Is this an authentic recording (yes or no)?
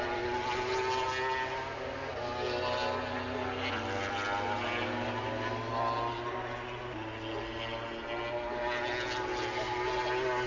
yes